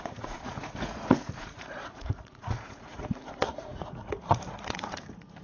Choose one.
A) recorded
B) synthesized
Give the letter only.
B